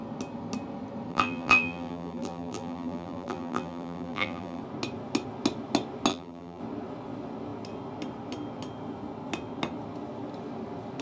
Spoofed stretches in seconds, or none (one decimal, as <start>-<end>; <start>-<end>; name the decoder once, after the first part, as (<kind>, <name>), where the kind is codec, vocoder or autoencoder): 1.1-4.6 (vocoder, BigVGAN v2); 6.1-6.6